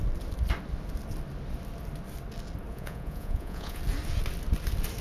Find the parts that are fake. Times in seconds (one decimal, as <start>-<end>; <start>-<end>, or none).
2.7-3.8